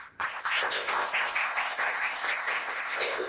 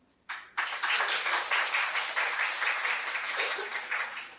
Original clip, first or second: second